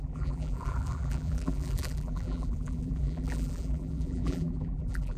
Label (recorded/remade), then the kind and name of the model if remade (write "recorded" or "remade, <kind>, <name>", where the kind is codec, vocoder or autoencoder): remade, vocoder, BigVGAN v2